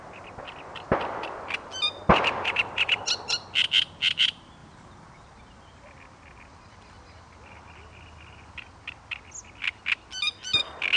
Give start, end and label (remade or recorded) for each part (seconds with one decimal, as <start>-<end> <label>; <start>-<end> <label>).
0.0-2.1 recorded; 2.1-3.0 remade; 3.0-4.6 recorded; 4.6-5.4 remade; 5.4-11.0 recorded